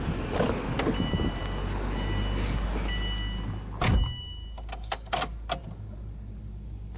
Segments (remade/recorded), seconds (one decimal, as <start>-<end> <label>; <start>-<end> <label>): 0.0-7.0 recorded